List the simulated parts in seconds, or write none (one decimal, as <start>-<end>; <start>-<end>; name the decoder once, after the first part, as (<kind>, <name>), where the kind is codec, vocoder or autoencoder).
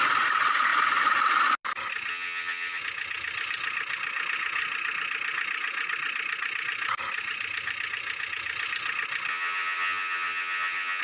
2.1-2.8 (vocoder, HiFi-GAN); 9.3-11.0